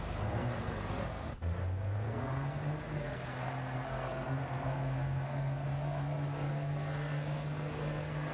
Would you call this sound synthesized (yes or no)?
yes